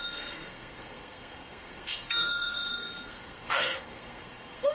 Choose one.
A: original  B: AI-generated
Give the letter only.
B